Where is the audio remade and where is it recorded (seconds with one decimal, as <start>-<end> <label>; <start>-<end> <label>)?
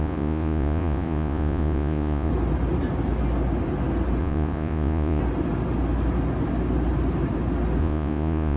0.0-2.3 remade; 2.3-4.2 recorded; 4.2-5.2 remade; 5.2-7.8 recorded; 7.8-8.6 remade